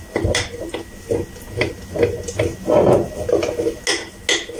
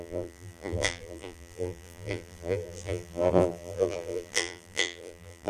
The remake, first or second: second